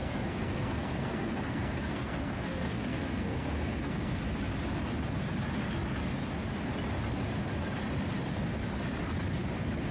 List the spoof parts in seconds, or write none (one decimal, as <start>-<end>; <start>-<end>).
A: 0.0-4.2